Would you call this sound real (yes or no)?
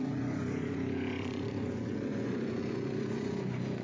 no